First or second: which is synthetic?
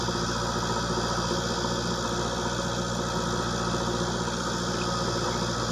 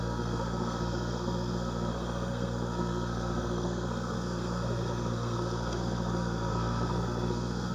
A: second